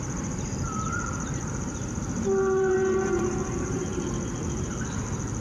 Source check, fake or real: fake